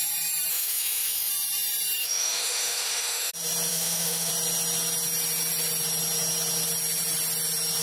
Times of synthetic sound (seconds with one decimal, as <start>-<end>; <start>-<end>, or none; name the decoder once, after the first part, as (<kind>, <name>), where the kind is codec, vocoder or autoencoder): 0.5-1.3 (autoencoder, DAC-VAE); 2.0-3.3; 3.7-4.3